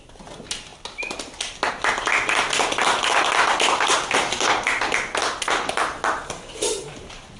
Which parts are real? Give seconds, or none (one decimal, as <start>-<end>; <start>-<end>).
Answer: 0.0-7.4